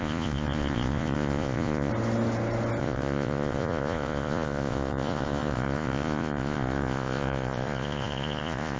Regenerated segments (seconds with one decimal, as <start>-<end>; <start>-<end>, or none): 0.0-1.9; 2.8-8.8